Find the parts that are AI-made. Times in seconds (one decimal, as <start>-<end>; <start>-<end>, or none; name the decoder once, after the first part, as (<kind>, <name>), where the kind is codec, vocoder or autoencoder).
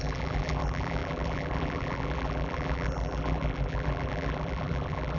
0.0-5.2 (vocoder, BigVGAN v2)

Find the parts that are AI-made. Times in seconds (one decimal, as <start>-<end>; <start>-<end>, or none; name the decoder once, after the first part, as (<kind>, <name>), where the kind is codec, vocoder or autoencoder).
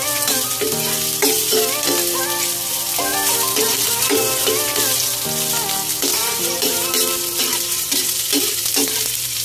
3.1-4.4 (vocoder, BigVGAN v2); 6.2-6.9; 7.5-8.1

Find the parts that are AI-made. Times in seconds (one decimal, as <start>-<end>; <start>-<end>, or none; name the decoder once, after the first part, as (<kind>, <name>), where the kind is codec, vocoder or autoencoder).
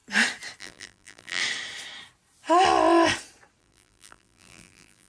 0.6-1.4 (vocoder, BigVGAN v2); 3.6-5.1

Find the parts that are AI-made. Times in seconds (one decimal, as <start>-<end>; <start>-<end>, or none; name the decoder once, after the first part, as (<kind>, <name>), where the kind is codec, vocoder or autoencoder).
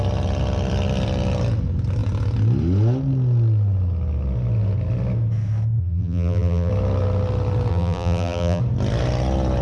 5.8-6.7 (vocoder, BigVGAN v2); 7.7-8.6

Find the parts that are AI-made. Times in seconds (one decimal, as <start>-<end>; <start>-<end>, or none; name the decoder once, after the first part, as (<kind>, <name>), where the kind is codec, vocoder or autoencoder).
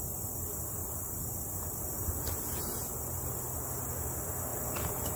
0.8-3.9 (vocoder, BigVGAN v2); 4.5-5.2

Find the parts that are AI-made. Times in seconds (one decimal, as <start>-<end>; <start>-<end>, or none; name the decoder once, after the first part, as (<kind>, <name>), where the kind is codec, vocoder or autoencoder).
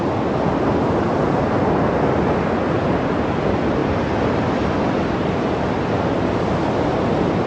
none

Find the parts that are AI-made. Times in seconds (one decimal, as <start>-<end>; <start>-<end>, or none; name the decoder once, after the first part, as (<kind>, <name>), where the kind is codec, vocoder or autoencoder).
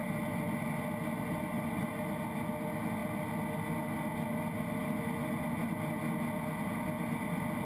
none